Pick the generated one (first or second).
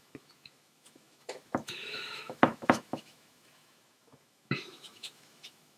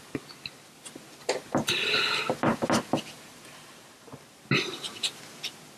first